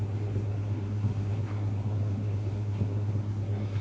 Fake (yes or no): yes